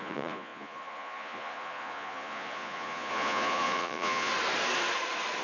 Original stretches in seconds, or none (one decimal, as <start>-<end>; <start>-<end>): 4.3-5.4